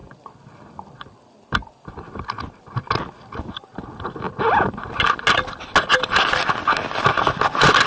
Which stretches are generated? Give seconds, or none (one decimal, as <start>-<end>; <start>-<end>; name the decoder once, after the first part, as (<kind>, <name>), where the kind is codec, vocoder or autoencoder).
none